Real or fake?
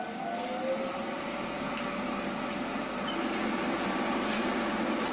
real